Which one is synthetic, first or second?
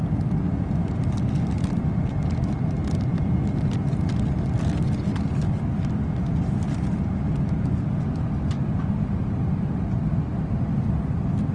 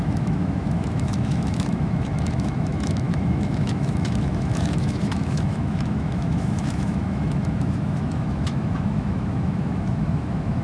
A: second